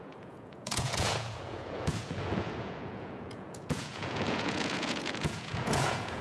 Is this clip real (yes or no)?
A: no